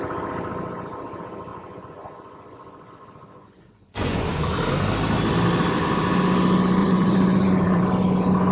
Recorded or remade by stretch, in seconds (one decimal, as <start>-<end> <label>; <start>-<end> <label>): 0.0-1.5 recorded; 1.5-4.4 remade; 4.4-6.8 recorded; 6.8-7.8 remade; 7.8-8.5 recorded